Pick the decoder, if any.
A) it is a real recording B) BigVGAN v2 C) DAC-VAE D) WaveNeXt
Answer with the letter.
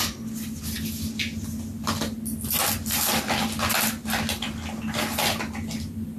A